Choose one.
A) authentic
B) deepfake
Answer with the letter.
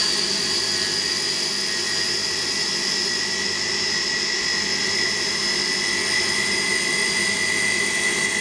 A